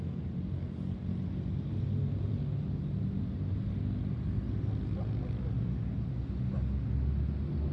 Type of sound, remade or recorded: recorded